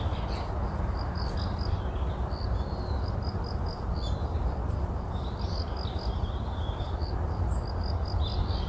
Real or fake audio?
real